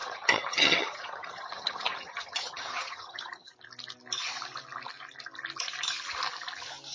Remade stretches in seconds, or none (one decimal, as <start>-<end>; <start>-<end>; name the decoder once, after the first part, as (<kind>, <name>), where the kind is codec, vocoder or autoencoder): 0.0-3.5 (vocoder, HiFi-GAN)

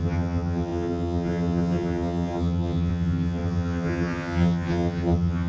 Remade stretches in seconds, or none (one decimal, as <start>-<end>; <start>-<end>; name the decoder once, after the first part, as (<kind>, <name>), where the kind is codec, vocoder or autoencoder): 0.0-5.5 (vocoder, HiFi-GAN)

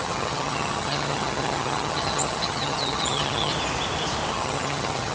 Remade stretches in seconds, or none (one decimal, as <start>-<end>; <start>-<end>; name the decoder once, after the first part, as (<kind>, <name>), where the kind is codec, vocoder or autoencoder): 0.0-3.5 (vocoder, HiFi-GAN); 4.3-5.1

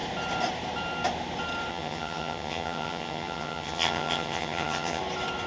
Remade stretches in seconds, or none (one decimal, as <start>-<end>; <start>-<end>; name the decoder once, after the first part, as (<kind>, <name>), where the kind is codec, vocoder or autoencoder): 1.7-5.0 (vocoder, HiFi-GAN)

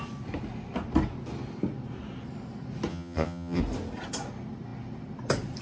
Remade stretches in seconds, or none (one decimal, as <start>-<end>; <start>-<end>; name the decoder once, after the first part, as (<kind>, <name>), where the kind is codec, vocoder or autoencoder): 2.9-3.6 (vocoder, HiFi-GAN)

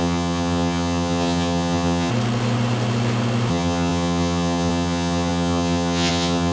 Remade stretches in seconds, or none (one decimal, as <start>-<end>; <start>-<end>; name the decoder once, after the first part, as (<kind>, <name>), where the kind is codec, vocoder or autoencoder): 0.0-2.1 (vocoder, HiFi-GAN); 3.5-6.5

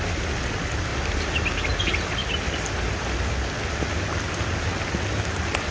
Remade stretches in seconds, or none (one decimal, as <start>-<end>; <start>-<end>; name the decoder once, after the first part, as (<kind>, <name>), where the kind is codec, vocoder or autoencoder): none

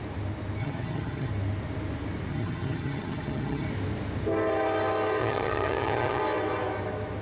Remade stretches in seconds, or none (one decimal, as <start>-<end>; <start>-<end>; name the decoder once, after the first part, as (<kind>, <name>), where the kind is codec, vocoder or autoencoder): 0.6-1.3 (vocoder, HiFi-GAN); 2.3-3.7; 5.2-6.2